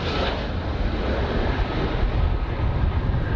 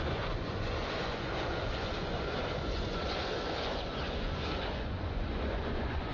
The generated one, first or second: second